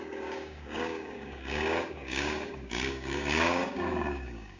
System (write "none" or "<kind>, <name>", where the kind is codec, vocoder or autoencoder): codec, DAC